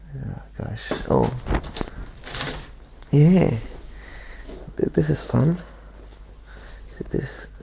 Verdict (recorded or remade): recorded